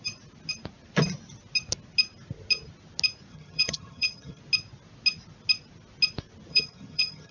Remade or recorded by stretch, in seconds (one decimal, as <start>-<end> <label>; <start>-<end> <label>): 0.0-3.3 recorded; 3.3-4.4 remade; 4.4-6.5 recorded; 6.5-7.3 remade